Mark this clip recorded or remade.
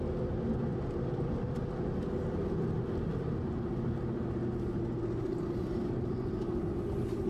recorded